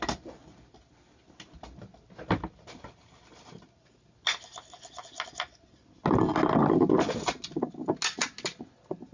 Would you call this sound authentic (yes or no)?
yes